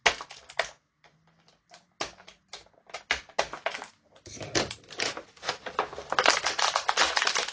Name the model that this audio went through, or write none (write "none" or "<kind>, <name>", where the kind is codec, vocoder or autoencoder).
none